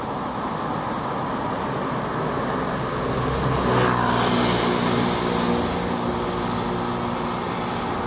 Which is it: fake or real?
real